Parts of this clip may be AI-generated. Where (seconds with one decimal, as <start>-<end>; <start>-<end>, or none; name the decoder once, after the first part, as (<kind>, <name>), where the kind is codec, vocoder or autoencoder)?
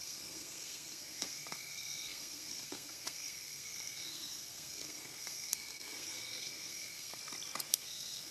0.0-7.2 (codec, SNAC); 7.7-8.3